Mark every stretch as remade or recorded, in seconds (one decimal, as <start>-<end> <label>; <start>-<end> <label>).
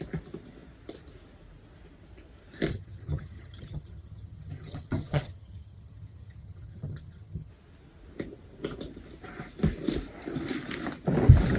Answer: 0.0-2.7 recorded; 2.7-7.5 remade; 7.5-11.6 recorded